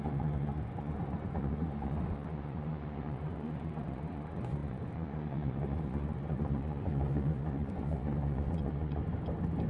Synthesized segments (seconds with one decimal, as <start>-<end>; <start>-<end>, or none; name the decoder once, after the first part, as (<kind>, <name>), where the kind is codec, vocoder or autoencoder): 0.0-9.0 (vocoder, Vocos)

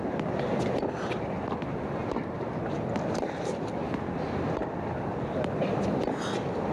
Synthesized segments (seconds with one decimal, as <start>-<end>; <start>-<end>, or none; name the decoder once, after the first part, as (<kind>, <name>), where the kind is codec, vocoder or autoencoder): none

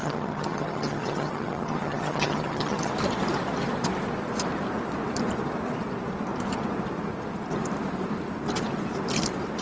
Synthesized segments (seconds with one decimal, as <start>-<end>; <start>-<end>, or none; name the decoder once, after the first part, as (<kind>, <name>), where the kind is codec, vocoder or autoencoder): 0.0-2.9 (vocoder, HiFi-GAN)

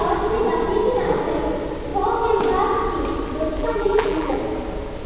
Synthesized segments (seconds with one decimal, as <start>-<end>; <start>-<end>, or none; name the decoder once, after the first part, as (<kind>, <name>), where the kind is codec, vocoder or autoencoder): 3.6-4.4 (vocoder, BigVGAN v2)

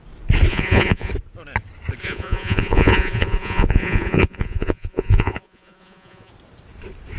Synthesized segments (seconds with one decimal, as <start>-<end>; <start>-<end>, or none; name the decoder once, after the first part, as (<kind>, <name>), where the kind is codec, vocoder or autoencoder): 0.5-1.1 (vocoder, Vocos); 2.0-6.3